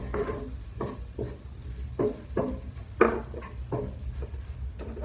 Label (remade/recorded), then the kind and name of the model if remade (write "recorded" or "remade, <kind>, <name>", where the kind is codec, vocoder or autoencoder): recorded